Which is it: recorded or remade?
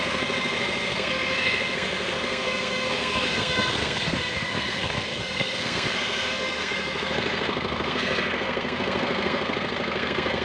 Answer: remade